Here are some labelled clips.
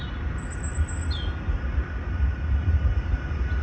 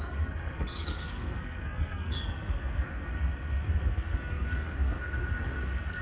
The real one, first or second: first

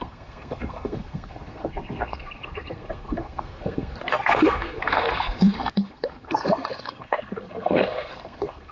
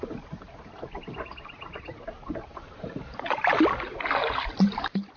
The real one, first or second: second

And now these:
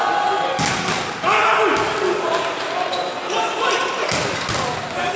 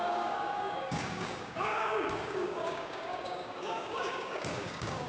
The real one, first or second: first